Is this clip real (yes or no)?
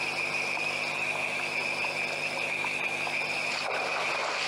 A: yes